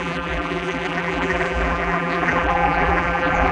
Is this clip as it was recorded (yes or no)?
no